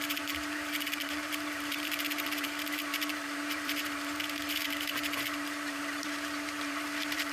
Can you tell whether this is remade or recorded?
remade